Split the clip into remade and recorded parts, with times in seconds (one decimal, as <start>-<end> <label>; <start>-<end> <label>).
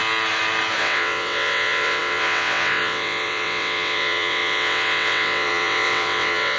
0.0-0.8 recorded; 0.8-6.6 remade